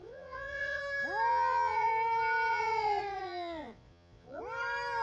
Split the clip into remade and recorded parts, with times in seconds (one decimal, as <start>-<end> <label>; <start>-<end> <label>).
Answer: 0.0-0.8 remade; 0.8-1.3 recorded; 1.3-1.9 remade; 1.9-2.5 recorded; 2.5-4.4 remade; 4.4-5.0 recorded